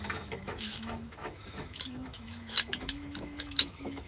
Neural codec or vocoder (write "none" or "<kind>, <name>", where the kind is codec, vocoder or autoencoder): autoencoder, DAC-VAE